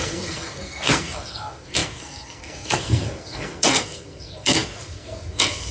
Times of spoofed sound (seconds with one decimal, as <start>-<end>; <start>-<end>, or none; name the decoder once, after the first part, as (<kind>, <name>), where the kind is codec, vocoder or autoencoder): 0.0-5.7 (codec, SNAC)